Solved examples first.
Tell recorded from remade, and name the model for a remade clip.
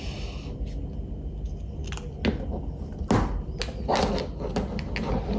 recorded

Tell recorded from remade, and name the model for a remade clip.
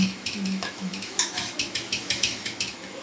remade, autoencoder, DAC-VAE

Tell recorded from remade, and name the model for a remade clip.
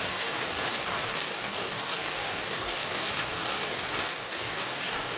remade, codec, DAC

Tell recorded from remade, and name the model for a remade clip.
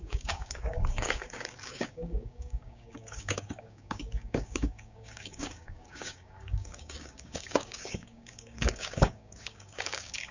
remade, codec, DAC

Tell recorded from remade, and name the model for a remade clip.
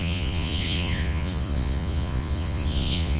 remade, vocoder, Vocos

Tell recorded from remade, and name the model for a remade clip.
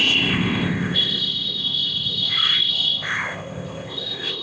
remade, codec, ZipCodec